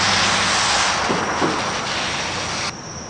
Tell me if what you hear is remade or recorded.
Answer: recorded